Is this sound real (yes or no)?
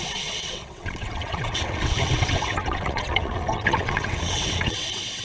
no